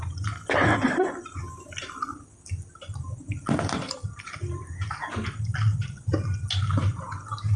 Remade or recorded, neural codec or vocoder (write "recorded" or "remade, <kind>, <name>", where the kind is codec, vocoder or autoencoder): recorded